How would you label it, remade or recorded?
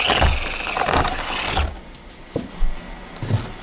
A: recorded